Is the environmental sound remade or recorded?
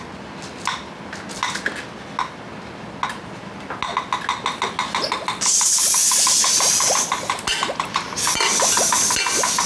recorded